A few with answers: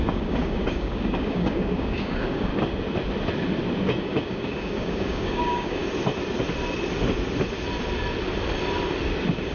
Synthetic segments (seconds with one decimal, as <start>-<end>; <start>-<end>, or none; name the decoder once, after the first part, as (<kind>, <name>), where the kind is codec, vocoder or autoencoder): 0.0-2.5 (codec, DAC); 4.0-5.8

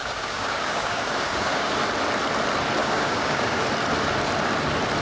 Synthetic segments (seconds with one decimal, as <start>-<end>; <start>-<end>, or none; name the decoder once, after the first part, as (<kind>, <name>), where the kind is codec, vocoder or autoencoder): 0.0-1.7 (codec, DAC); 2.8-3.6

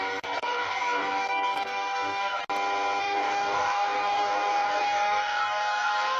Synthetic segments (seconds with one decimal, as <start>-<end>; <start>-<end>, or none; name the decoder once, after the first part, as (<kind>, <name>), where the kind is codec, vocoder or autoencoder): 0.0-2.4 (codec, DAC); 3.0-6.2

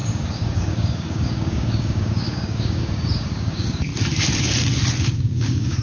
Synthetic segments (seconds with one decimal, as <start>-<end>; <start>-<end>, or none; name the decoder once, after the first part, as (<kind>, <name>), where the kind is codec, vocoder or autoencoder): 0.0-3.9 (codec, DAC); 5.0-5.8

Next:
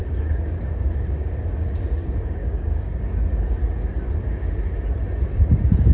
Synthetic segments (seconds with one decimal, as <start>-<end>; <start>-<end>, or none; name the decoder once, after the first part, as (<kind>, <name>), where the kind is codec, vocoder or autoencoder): 0.0-3.5 (codec, DAC)

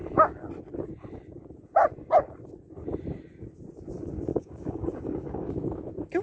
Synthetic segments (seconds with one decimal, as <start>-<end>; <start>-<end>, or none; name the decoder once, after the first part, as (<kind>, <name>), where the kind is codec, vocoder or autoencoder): 4.3-5.5 (codec, DAC)

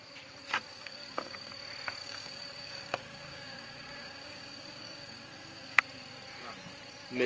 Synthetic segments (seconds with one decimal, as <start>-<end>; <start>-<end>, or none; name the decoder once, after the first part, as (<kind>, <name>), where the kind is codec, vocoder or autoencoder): 0.7-1.5 (codec, DAC); 2.0-5.8

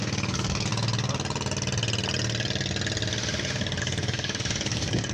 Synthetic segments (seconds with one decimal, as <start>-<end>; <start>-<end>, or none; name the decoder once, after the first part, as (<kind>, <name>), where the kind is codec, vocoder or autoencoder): 0.0-0.7 (codec, DAC); 3.8-5.1